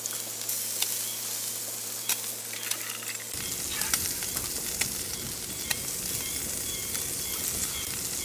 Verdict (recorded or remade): recorded